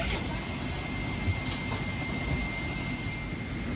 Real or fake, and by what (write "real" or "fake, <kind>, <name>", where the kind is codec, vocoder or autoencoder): real